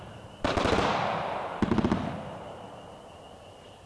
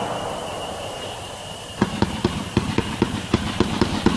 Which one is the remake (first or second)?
second